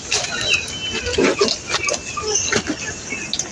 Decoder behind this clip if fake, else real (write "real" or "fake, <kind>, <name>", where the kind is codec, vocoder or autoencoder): real